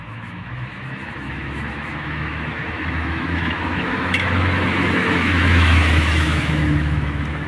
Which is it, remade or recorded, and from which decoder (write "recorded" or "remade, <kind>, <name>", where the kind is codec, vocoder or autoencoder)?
remade, autoencoder, DAC-VAE